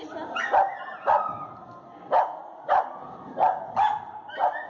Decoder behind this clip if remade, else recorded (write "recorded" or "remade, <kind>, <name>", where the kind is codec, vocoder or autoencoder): recorded